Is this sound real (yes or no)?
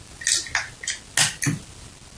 yes